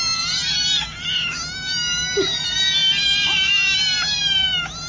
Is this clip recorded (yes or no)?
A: yes